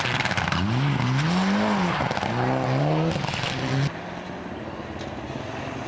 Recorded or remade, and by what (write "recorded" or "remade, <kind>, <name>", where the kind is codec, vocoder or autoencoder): recorded